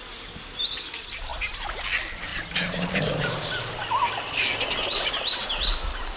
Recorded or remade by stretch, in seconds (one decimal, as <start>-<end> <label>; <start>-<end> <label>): 0.0-6.2 recorded